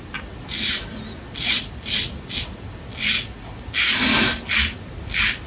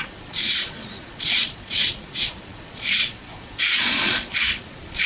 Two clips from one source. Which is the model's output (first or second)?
second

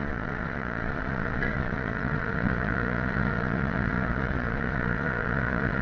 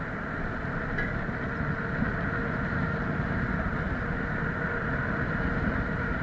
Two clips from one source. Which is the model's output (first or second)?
first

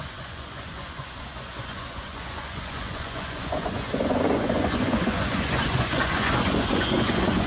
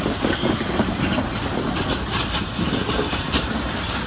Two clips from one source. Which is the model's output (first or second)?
first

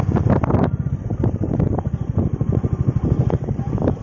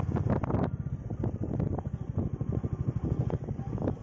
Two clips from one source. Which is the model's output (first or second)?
first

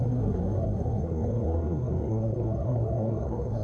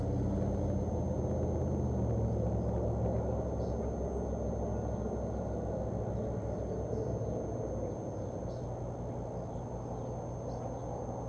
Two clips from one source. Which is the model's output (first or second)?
first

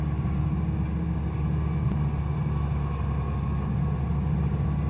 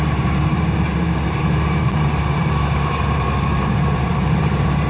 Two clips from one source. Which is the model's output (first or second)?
second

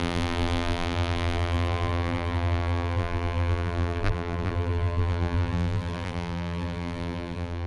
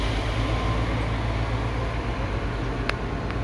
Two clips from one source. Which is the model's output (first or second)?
first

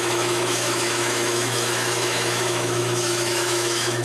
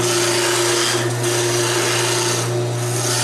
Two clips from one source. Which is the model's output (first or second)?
first